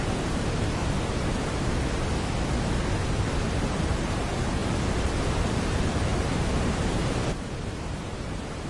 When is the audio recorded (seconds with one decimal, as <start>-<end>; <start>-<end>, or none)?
0.8-3.7